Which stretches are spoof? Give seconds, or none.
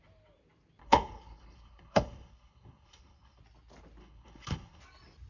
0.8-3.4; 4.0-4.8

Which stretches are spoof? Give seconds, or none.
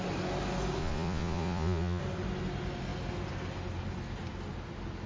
0.8-2.0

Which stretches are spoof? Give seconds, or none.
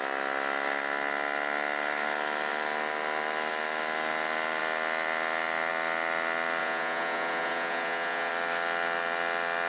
6.6-8.3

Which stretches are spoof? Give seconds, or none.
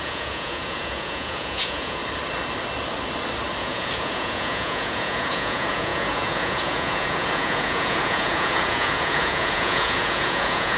0.0-2.0; 3.6-10.8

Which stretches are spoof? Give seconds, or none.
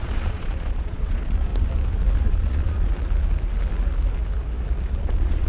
0.0-1.5; 2.2-2.9; 5.0-5.5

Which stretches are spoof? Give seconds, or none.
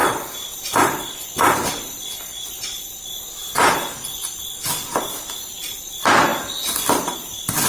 0.0-7.7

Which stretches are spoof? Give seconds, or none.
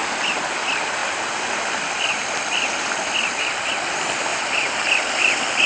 0.0-0.6; 1.0-3.6; 4.3-5.7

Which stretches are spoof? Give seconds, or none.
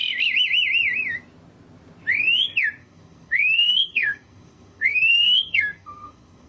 2.8-6.5